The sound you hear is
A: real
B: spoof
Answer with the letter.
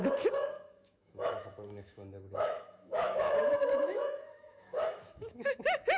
B